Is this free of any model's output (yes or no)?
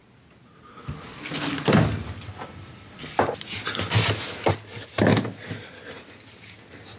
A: yes